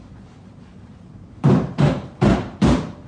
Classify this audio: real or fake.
fake